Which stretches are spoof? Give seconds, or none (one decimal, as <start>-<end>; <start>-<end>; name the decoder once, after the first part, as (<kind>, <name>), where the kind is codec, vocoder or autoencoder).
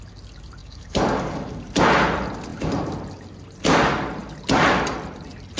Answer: 0.6-1.6 (codec, DAC)